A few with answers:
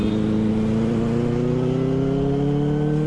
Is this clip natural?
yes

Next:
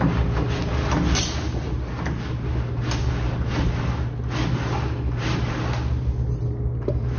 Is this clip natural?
yes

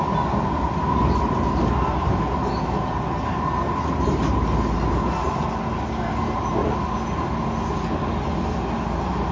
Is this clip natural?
yes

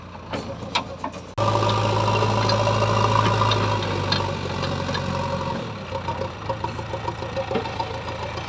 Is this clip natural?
yes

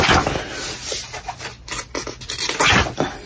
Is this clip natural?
yes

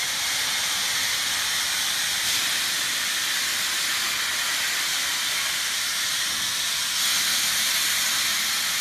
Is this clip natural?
yes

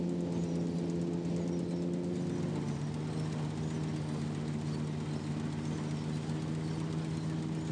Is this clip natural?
yes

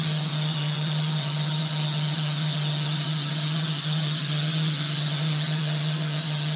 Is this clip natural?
no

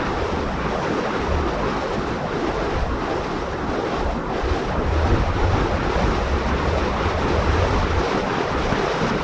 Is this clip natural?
no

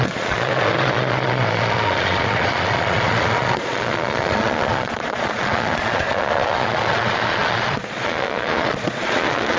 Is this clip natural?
no